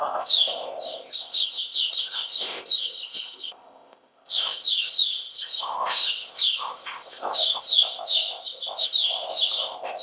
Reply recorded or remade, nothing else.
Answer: remade